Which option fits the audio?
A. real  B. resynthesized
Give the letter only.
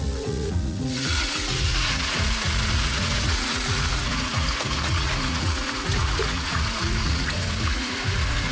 B